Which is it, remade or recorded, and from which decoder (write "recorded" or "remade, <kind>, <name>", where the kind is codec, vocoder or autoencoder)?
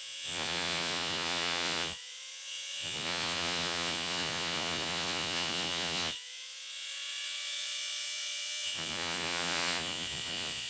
remade, vocoder, Vocos